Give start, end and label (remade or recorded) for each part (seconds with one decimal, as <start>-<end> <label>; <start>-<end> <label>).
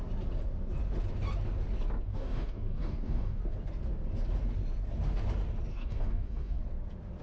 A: 0.0-2.1 recorded; 2.1-3.4 remade; 3.4-5.7 recorded; 5.7-6.6 remade; 6.6-7.2 recorded